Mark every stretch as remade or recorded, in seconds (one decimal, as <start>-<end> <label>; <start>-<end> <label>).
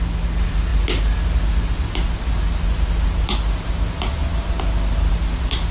0.0-5.7 recorded